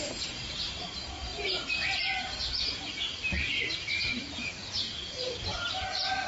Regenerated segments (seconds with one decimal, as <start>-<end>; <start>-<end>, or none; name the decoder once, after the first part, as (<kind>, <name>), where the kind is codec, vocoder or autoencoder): 0.0-6.3 (vocoder, BigVGAN v2)

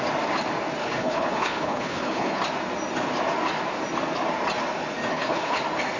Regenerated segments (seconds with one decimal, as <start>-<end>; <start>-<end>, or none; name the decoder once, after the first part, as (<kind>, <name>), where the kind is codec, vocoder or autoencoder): 0.8-2.4 (codec, HILCodec); 5.1-5.6

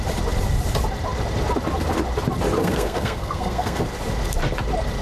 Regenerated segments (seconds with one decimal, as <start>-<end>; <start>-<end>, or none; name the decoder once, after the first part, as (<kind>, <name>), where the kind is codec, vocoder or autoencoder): 2.6-3.8 (codec, SNAC)

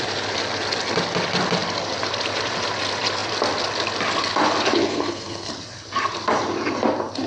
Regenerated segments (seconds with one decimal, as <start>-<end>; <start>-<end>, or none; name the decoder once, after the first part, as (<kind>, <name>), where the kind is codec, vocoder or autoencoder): 4.8-5.5 (codec, SNAC)

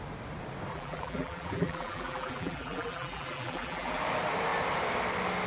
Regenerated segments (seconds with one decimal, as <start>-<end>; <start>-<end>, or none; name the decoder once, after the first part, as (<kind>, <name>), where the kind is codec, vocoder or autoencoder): 0.7-4.0 (vocoder, BigVGAN v2)

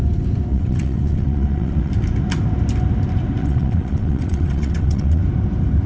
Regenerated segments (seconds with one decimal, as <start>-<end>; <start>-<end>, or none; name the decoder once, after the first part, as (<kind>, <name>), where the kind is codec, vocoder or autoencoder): 0.5-1.9 (vocoder, WaveNeXt); 3.4-5.2

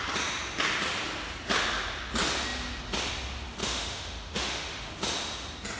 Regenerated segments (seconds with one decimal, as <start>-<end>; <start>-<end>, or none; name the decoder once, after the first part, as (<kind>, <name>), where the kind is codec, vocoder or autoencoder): 3.6-4.9 (autoencoder, DAC-VAE)

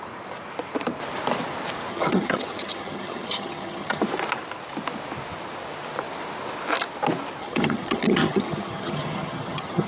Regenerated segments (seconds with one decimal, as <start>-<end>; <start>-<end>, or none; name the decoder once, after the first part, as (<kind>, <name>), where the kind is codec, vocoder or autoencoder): 1.9-4.0 (vocoder, HiFi-GAN); 7.4-9.9